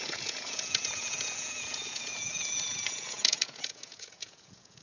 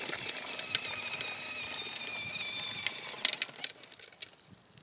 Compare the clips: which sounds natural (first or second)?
second